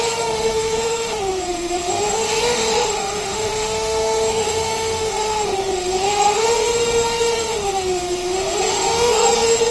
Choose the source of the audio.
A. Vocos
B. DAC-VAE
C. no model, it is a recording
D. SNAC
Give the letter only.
B